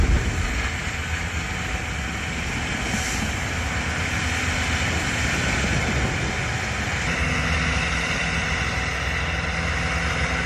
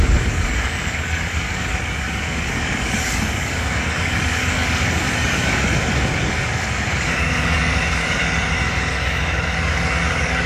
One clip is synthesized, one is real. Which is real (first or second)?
first